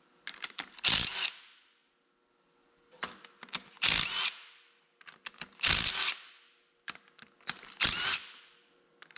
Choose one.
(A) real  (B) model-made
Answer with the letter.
A